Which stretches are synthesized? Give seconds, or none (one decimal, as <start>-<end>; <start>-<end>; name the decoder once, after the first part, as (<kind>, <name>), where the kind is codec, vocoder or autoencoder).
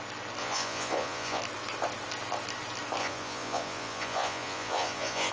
0.4-1.4 (vocoder, Vocos); 3.0-5.3